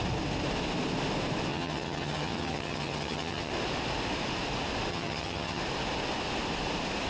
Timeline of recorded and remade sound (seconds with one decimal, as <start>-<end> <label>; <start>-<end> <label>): 0.0-1.5 recorded; 1.5-3.5 remade; 3.5-4.9 recorded; 4.9-5.6 remade; 5.6-7.1 recorded